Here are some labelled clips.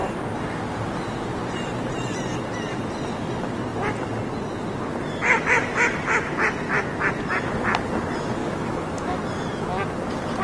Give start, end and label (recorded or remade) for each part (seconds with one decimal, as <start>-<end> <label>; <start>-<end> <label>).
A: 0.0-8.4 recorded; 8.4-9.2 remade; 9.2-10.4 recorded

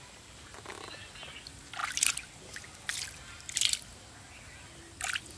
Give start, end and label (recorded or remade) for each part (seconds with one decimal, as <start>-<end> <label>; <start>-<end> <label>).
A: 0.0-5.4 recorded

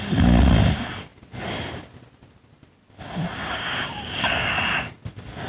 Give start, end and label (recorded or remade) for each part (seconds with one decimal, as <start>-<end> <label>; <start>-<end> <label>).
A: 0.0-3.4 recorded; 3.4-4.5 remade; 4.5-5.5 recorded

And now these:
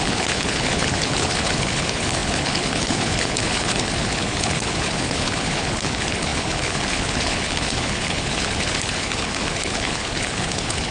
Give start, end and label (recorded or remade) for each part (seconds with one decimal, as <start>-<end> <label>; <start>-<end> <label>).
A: 0.0-10.9 remade

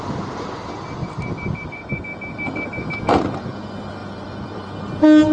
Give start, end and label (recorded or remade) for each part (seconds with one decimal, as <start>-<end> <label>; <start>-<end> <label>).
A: 0.0-1.0 recorded; 1.0-2.0 remade; 2.0-4.0 recorded; 4.0-4.8 remade; 4.8-5.3 recorded